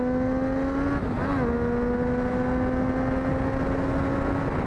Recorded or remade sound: recorded